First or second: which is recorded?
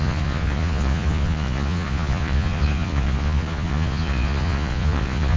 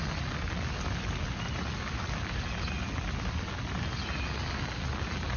second